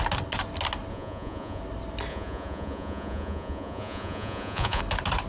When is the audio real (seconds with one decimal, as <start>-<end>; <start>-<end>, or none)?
0.0-0.9; 1.6-2.1; 4.8-5.3